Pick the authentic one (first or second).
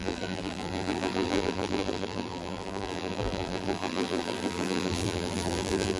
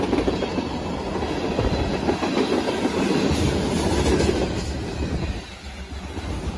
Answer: second